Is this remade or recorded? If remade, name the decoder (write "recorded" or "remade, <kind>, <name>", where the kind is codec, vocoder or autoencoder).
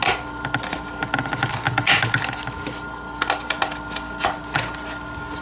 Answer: recorded